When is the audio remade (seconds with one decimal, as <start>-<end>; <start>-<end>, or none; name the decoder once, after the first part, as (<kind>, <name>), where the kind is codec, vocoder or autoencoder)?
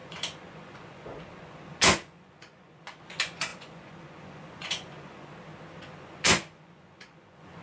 0.0-5.3 (vocoder, Vocos); 5.8-7.6